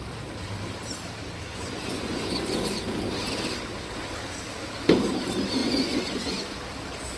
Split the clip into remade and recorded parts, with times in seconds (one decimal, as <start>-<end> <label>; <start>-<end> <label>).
0.0-1.5 recorded; 1.5-2.6 remade; 2.6-5.6 recorded; 5.6-6.5 remade; 6.5-7.2 recorded